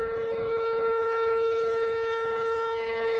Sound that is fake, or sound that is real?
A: fake